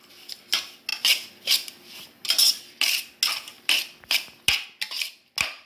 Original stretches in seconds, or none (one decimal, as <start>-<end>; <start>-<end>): 0.0-5.7